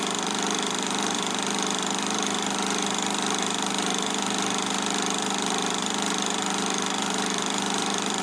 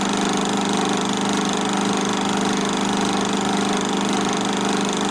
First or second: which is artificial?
first